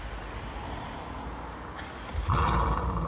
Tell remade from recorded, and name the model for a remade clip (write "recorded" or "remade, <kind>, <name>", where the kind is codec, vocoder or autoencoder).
recorded